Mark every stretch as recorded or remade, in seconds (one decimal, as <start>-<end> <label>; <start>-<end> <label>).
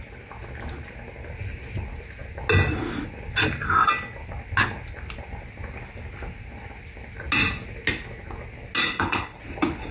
0.0-8.8 recorded; 8.8-9.4 remade; 9.4-9.9 recorded